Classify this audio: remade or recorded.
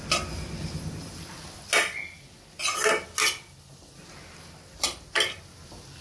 recorded